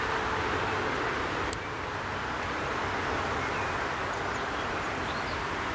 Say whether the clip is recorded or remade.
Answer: recorded